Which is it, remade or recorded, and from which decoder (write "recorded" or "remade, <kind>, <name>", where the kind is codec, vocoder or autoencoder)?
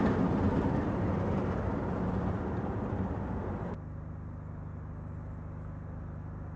recorded